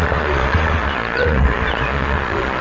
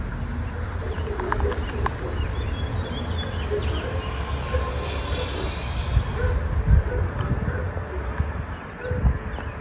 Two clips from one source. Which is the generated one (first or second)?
first